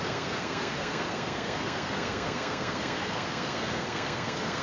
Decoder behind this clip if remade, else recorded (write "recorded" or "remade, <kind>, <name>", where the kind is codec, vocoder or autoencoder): remade, codec, SNAC